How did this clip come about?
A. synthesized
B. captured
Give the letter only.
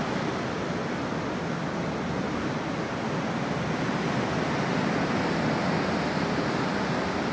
B